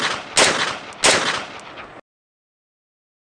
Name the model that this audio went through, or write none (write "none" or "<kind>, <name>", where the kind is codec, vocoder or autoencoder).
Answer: none